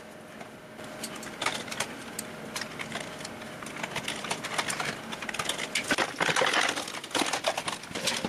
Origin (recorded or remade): recorded